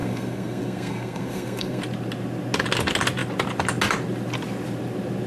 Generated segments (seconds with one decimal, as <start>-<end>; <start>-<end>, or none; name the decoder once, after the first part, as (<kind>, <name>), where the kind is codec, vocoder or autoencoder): 0.0-1.8 (codec, SNAC)